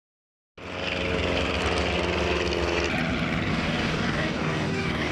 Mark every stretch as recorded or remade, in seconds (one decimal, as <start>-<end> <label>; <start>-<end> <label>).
0.0-3.5 recorded; 3.5-5.1 remade